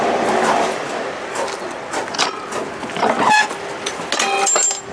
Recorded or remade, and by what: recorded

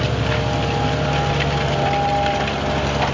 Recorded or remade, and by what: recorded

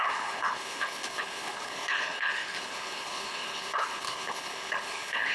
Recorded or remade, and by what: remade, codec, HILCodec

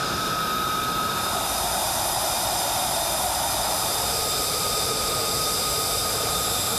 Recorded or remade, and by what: remade, vocoder, BigVGAN v2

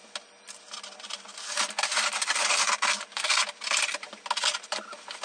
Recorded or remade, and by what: recorded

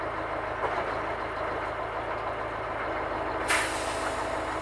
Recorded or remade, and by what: recorded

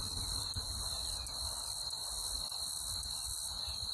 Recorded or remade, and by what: recorded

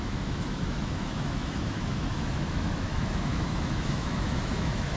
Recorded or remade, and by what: remade, autoencoder, DAC-VAE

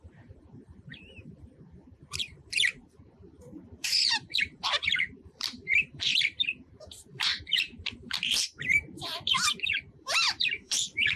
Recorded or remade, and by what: remade, vocoder, BigVGAN v2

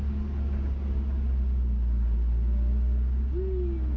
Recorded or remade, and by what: recorded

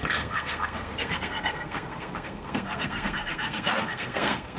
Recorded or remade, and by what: remade, codec, SNAC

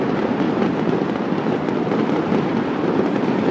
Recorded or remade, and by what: recorded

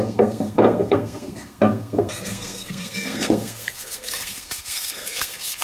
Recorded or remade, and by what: remade, codec, SNAC